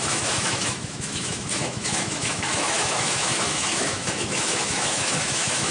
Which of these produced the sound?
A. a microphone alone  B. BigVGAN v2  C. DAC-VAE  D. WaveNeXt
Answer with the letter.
C